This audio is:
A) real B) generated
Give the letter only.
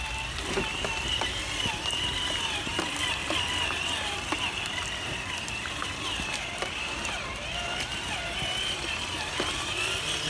A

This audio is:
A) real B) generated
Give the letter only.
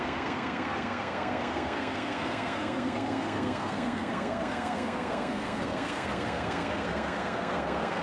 B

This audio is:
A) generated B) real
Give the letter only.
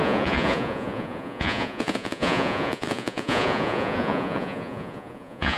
A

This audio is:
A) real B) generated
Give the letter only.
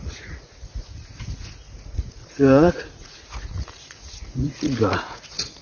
B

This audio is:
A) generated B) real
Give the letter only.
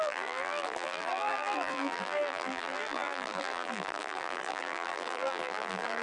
A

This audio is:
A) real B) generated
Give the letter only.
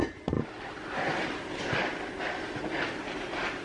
B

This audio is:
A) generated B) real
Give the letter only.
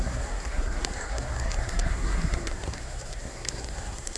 A